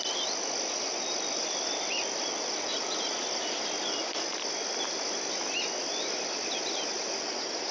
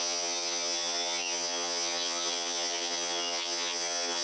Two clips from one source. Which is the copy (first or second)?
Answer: second